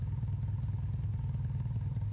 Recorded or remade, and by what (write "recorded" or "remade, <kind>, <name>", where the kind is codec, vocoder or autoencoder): recorded